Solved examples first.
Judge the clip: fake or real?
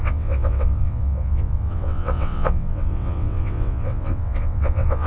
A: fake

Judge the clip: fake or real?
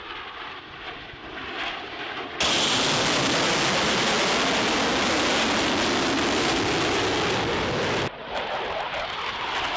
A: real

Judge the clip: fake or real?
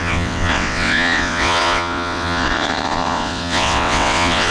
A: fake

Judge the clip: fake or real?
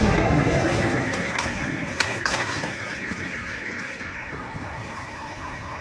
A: fake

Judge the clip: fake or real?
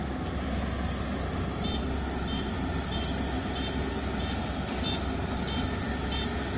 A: real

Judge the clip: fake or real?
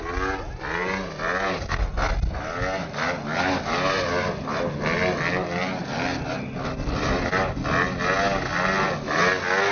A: real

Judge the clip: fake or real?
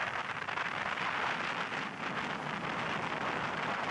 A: real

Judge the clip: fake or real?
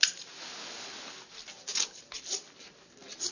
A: real